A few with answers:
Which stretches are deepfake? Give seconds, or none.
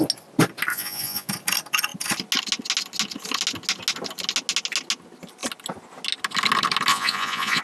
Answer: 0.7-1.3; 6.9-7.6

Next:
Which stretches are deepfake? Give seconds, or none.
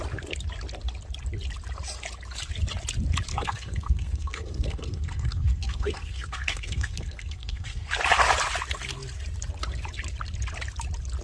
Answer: 3.3-7.9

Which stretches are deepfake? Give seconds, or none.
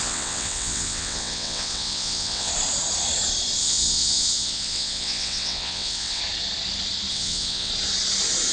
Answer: 0.0-2.5; 3.6-6.2; 7.1-7.7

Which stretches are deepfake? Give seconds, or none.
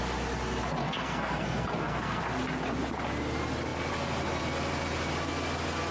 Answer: 0.8-2.2